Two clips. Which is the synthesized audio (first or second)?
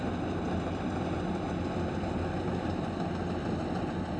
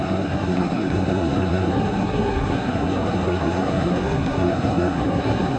second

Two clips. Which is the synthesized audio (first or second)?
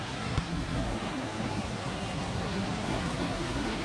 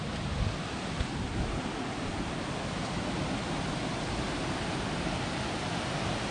first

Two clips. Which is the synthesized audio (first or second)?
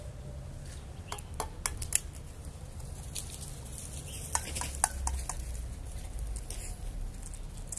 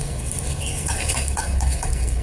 second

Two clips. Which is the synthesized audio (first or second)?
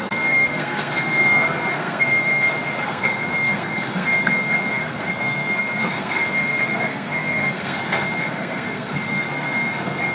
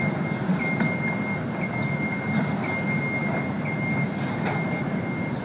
first